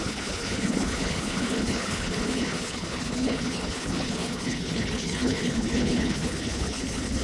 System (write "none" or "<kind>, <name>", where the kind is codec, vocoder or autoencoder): codec, HILCodec